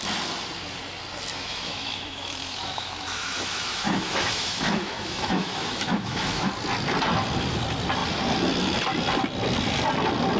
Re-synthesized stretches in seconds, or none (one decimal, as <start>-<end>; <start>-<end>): 1.3-6.5